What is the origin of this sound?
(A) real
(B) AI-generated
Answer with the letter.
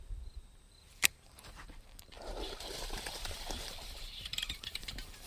B